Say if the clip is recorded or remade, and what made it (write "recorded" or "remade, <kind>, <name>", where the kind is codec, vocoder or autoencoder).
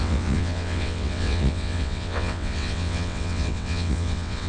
remade, vocoder, WaveNeXt